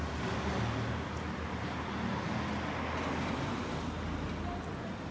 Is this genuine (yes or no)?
yes